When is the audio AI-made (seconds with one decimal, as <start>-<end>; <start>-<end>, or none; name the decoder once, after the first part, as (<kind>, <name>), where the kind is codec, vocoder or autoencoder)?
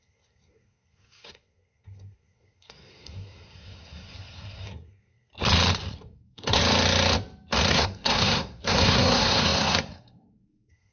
0.0-5.3 (codec, SNAC); 5.9-6.6; 7.7-10.9